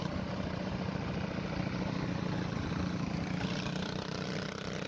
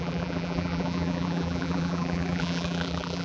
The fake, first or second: second